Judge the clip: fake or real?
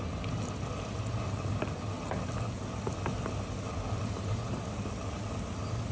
real